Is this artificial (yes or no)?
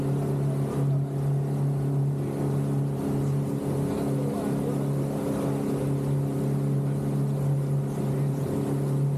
no